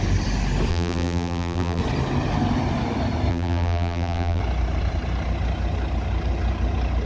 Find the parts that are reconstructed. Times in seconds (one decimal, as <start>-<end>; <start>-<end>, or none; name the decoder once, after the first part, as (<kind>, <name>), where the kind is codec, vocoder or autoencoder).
0.7-1.8 (vocoder, BigVGAN v2); 3.3-4.4